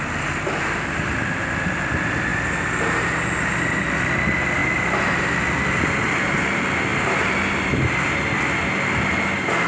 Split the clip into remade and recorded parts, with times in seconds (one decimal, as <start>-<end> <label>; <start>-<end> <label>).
0.0-9.7 recorded